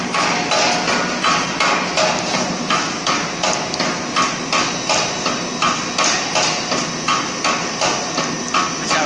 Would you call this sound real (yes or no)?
yes